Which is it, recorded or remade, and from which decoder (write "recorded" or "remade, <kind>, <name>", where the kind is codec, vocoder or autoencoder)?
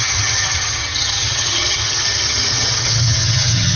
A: remade, vocoder, HiFi-GAN